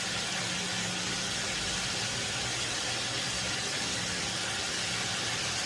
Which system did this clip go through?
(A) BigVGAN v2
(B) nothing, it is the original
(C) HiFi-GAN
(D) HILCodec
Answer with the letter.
B